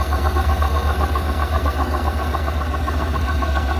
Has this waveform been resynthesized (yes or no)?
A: yes